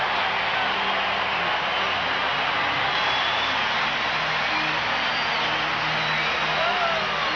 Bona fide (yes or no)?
yes